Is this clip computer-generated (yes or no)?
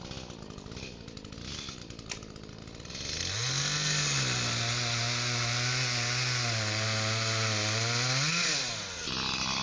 no